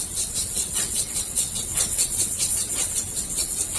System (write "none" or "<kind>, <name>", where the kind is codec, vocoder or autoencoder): vocoder, WaveNeXt